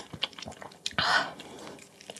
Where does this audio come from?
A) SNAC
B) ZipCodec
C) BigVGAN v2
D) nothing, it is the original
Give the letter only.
C